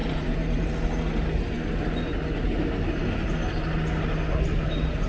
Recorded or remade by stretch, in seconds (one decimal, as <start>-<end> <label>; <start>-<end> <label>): 0.0-0.7 remade; 0.7-5.1 recorded